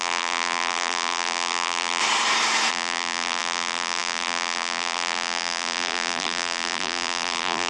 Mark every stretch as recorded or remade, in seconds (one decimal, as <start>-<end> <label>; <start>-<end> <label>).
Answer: 0.0-2.0 remade; 2.0-2.7 recorded; 2.7-7.7 remade